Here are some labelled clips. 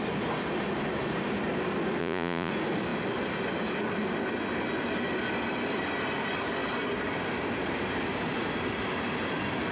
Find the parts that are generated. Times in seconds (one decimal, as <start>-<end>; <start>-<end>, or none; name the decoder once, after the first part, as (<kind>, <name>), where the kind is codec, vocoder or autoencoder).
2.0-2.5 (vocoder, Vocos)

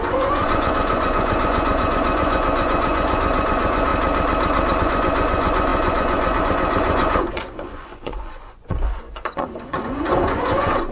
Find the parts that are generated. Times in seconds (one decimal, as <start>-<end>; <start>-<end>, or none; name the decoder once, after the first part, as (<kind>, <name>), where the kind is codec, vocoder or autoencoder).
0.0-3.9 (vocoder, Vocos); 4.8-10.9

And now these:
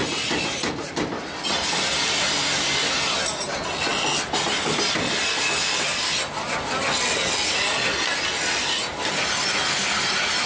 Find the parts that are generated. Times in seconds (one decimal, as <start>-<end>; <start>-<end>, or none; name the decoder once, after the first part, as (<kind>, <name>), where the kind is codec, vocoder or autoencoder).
none